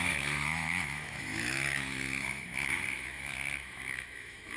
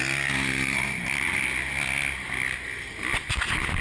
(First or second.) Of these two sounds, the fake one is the first